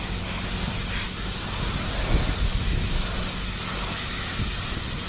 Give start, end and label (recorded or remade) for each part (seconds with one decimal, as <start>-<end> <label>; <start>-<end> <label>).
0.0-5.1 recorded